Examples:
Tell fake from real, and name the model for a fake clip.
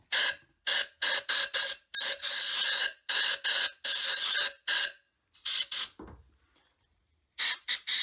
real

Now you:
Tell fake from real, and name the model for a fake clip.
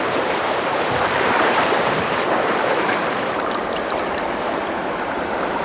fake, vocoder, BigVGAN v2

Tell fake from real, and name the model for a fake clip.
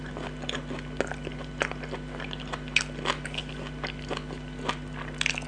real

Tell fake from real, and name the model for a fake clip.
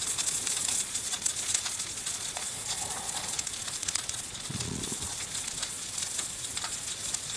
fake, vocoder, Vocos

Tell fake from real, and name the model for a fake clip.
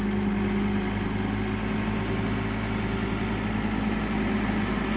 real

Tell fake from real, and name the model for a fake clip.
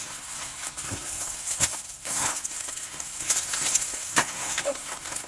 fake, codec, SNAC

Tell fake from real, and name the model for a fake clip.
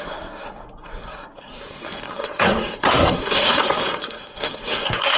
fake, codec, SNAC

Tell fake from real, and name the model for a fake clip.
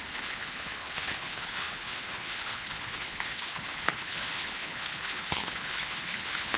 fake, codec, HILCodec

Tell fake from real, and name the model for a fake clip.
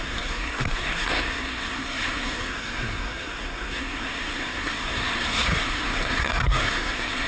fake, codec, SNAC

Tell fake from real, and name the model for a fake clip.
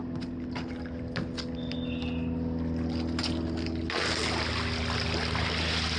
real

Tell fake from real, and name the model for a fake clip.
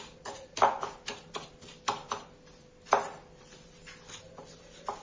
real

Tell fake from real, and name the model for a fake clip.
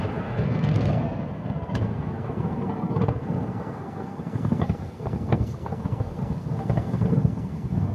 fake, codec, SNAC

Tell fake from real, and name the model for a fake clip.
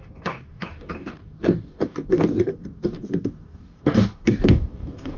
fake, codec, DAC